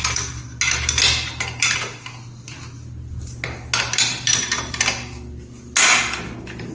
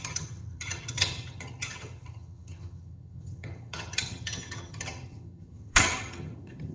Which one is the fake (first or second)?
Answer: second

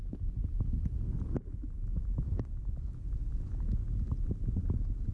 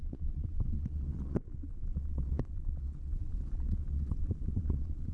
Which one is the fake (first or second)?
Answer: second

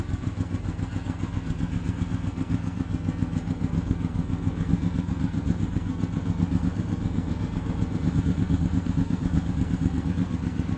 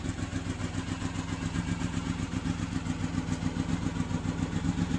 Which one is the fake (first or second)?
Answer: first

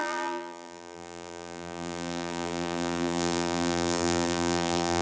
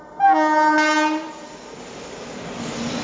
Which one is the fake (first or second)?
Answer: first